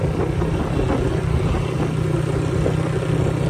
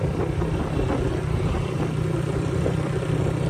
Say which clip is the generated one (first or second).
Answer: second